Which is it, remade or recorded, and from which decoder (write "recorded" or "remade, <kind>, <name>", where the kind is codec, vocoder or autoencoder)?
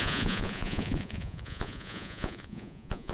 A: remade, vocoder, Vocos